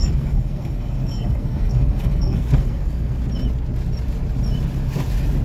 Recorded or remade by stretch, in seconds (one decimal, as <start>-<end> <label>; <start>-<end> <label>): 0.0-3.2 remade; 3.2-5.4 recorded